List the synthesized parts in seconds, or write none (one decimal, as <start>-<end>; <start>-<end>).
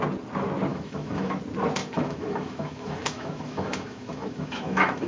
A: 0.7-1.4; 1.8-5.1